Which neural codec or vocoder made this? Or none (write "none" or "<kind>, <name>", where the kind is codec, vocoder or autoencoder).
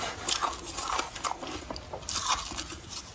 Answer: none